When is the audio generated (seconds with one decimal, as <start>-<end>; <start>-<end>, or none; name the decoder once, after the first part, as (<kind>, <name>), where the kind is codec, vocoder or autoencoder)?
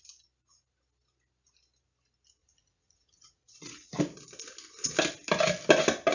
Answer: 2.4-4.0 (vocoder, Vocos)